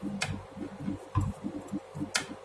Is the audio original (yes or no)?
yes